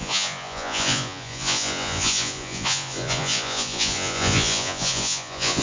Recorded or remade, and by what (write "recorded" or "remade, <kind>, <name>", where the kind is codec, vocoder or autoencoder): remade, vocoder, Vocos